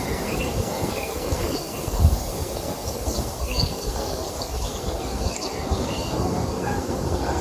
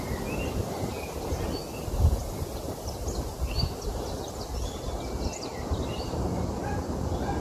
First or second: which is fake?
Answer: first